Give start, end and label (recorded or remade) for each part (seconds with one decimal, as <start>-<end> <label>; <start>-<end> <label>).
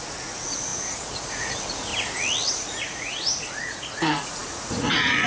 0.0-1.9 remade; 1.9-2.5 recorded; 2.5-5.3 remade